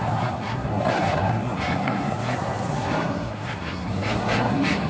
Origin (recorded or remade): remade